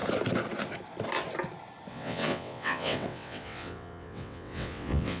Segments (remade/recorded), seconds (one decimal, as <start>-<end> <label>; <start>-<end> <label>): 0.0-1.9 recorded; 1.9-5.2 remade